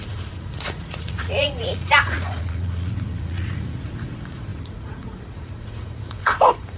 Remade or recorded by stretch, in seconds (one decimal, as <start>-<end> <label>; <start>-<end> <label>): 0.0-6.8 remade